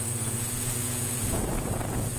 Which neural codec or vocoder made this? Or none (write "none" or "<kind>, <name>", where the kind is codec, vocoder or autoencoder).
vocoder, Vocos